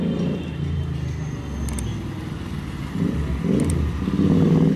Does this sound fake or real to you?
real